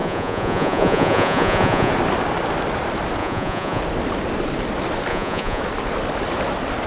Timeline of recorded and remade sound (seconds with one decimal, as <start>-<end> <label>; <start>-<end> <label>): 0.0-1.9 remade; 1.9-3.2 recorded; 3.2-3.8 remade; 3.8-5.1 recorded; 5.1-5.6 remade; 5.6-6.9 recorded

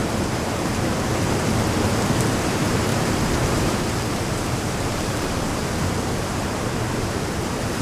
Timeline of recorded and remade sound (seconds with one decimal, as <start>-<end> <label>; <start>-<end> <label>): 0.0-2.9 recorded; 2.9-7.8 remade

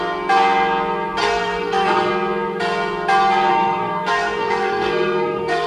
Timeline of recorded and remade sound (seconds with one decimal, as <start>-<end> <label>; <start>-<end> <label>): 0.0-1.2 recorded; 1.2-2.1 remade; 2.1-3.5 recorded; 3.5-5.7 remade

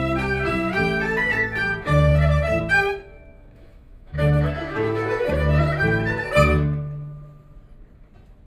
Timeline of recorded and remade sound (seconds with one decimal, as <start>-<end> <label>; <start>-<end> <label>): 0.0-3.3 recorded; 3.3-5.3 remade; 5.3-8.5 recorded